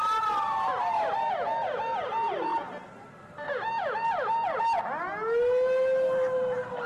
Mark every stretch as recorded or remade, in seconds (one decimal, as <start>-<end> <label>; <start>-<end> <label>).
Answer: 0.0-6.9 recorded